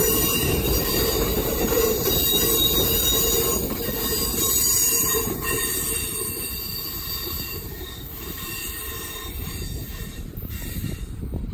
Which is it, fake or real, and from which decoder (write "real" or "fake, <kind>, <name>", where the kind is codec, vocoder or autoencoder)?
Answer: fake, vocoder, BigVGAN v2